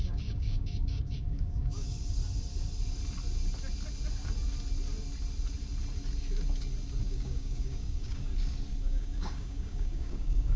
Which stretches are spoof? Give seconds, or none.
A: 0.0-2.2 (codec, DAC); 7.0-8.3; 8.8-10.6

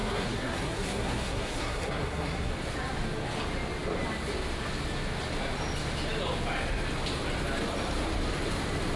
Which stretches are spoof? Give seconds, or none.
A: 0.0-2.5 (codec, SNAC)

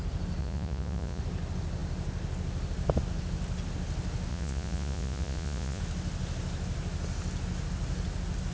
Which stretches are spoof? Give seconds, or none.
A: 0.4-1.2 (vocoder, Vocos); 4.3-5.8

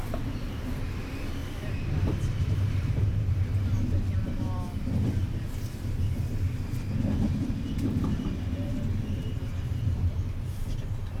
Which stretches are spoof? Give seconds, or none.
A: 1.4-4.4 (vocoder, BigVGAN v2); 7.3-10.2

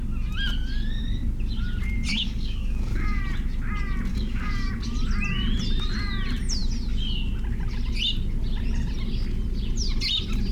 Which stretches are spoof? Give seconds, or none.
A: 2.1-3.2 (codec, DAC); 4.1-4.7